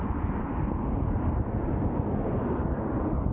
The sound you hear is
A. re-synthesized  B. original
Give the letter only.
B